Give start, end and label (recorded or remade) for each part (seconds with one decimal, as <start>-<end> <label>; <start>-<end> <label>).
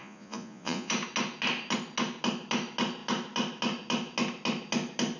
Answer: 0.0-0.9 remade; 0.9-5.2 recorded